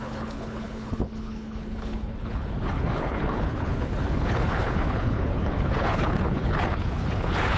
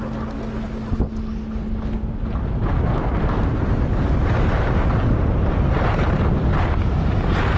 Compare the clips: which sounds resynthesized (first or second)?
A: first